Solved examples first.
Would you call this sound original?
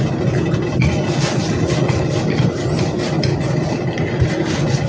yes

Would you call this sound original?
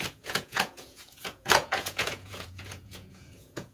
no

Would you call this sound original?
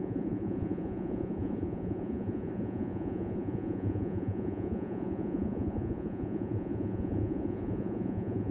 no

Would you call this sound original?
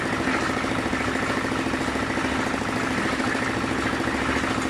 yes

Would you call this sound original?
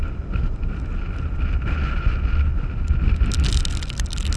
yes